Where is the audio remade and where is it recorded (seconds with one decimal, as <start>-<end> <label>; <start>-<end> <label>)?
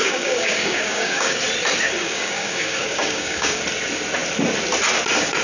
0.0-1.4 remade; 1.4-2.0 recorded; 2.0-3.6 remade; 3.6-5.4 recorded